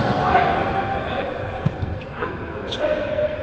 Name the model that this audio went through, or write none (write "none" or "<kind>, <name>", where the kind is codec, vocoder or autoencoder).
codec, SNAC